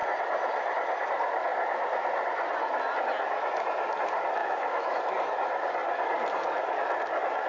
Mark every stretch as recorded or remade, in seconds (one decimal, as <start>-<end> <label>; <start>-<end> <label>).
0.0-4.4 recorded; 4.4-5.0 remade; 5.0-7.5 recorded